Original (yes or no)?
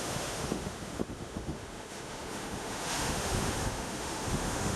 no